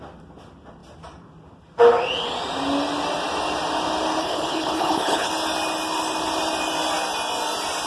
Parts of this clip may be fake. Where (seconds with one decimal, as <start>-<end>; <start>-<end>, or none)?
4.2-5.3